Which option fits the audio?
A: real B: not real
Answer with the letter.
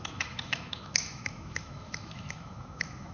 B